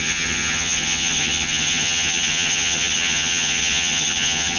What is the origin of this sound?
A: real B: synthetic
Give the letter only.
B